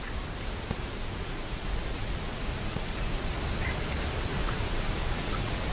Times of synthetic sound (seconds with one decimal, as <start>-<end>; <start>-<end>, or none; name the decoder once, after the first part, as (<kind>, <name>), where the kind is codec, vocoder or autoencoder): 0.9-3.3 (vocoder, Vocos); 4.4-5.7